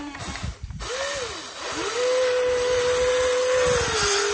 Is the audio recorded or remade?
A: recorded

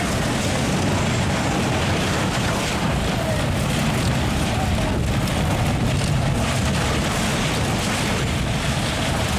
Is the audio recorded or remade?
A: recorded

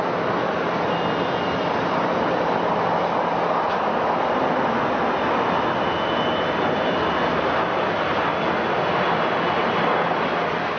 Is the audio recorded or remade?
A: recorded